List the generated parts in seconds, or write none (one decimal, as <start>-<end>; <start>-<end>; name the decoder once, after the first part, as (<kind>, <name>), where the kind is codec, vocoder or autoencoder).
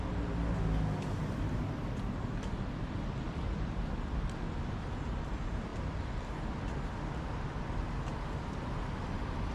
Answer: none